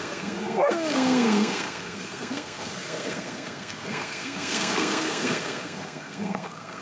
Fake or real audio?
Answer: fake